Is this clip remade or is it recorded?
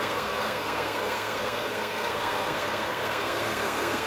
remade